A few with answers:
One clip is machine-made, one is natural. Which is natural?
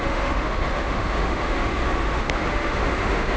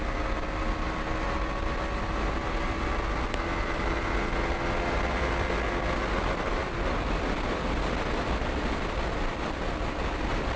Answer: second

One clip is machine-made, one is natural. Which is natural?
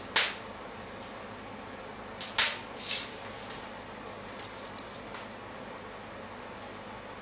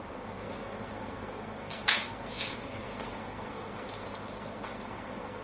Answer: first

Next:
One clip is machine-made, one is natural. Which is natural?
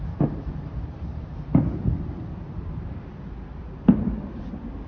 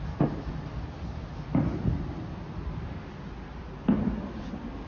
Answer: second